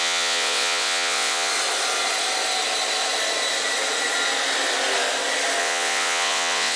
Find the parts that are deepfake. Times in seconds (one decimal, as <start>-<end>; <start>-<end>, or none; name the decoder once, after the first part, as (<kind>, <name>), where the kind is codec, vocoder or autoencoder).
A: 0.0-1.5 (vocoder, WaveNeXt); 5.6-6.8